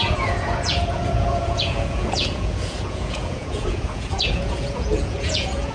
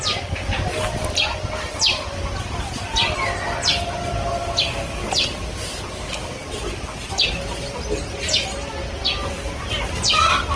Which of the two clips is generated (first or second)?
first